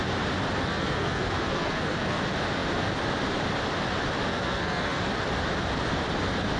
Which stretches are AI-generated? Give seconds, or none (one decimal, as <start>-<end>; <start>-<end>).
0.6-2.2; 4.3-5.0